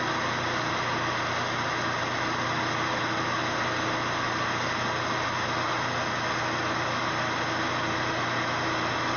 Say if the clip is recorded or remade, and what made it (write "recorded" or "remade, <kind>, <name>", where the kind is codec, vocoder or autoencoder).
recorded